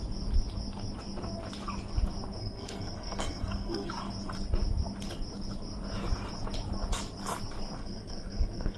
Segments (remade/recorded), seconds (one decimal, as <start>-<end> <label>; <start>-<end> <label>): 0.0-2.4 recorded; 2.4-3.9 remade; 3.9-7.8 recorded; 7.8-8.8 remade